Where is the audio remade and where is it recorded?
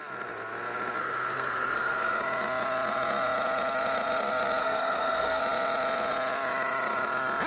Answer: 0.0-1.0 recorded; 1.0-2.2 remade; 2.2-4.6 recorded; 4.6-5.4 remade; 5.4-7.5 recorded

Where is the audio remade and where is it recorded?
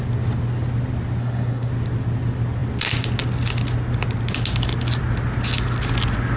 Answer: 0.0-1.2 recorded; 1.2-1.7 remade; 1.7-6.4 recorded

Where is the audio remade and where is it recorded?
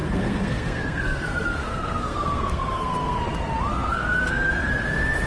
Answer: 0.0-3.2 remade; 3.2-3.7 recorded; 3.7-4.7 remade; 4.7-5.3 recorded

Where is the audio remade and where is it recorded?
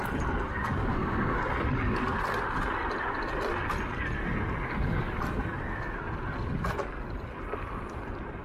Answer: 0.0-0.9 recorded; 0.9-1.4 remade; 1.4-8.4 recorded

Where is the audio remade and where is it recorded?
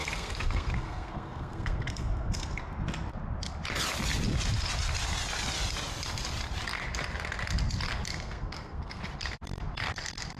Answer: 0.0-2.6 remade; 2.6-8.1 recorded; 8.1-9.0 remade; 9.0-10.4 recorded